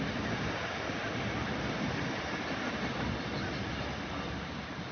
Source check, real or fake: real